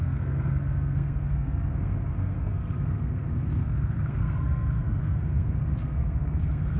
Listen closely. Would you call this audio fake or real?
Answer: fake